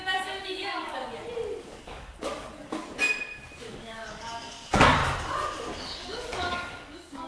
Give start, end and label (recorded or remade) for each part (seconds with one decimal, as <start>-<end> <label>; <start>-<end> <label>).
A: 0.0-1.0 remade; 1.0-1.6 recorded; 1.6-2.8 remade; 2.8-3.7 recorded; 3.7-5.0 remade; 5.0-5.8 recorded; 5.8-7.3 remade

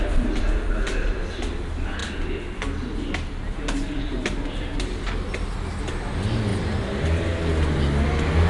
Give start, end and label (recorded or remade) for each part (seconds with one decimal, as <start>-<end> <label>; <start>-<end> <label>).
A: 0.0-8.5 recorded